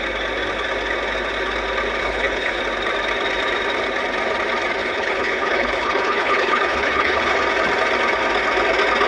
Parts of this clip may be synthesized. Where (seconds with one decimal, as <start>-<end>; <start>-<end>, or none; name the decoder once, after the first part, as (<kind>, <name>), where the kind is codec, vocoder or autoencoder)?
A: 2.0-2.6 (codec, HILCodec); 4.8-7.4